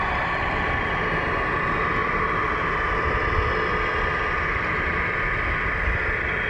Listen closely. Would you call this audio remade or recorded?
recorded